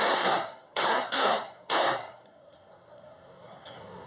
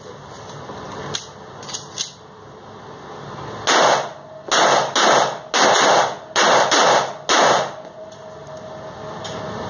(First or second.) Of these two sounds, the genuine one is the second